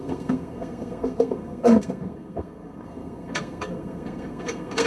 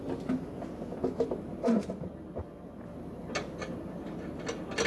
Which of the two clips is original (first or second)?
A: second